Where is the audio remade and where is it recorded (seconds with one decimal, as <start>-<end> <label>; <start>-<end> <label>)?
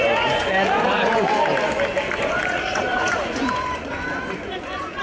0.0-1.3 remade; 1.3-2.2 recorded; 2.2-5.0 remade